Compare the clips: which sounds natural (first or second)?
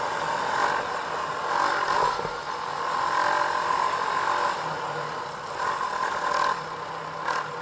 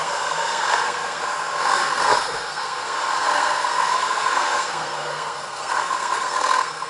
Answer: first